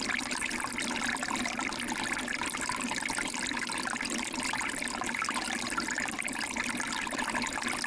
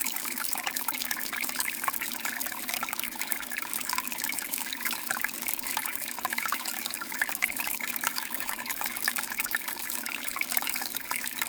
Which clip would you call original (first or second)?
first